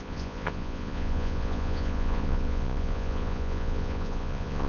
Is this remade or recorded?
remade